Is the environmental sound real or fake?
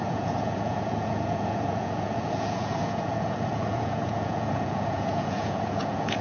fake